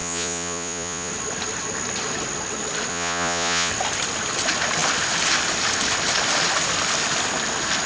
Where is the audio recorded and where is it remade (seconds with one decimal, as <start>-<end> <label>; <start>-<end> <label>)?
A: 0.0-1.1 remade; 1.1-2.9 recorded; 2.9-3.7 remade; 3.7-7.9 recorded